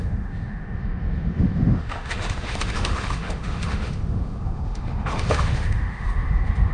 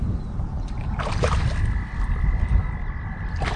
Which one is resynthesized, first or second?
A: first